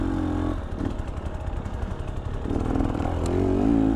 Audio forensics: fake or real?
real